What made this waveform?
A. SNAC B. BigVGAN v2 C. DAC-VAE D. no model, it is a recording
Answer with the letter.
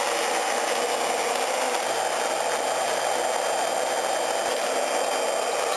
D